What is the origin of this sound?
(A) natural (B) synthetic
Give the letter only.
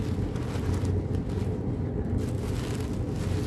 A